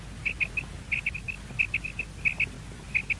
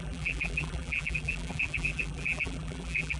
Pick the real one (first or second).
first